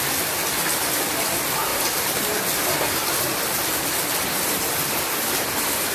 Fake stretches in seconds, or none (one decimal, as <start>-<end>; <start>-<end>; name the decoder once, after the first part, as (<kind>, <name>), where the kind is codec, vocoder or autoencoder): none